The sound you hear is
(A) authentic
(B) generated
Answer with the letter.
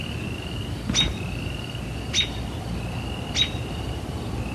A